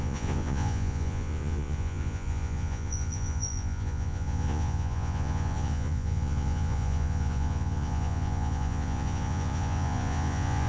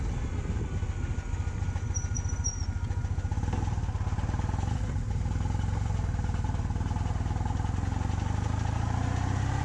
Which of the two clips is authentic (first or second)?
second